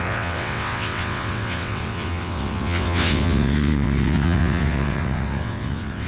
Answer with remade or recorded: remade